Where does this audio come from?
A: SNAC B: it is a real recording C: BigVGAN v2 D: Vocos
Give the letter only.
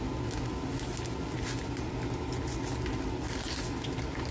B